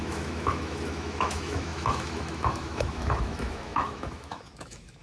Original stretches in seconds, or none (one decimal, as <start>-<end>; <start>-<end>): none